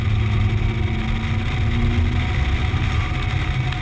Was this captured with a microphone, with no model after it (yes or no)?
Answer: yes